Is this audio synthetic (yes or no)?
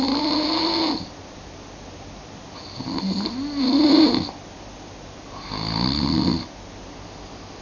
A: no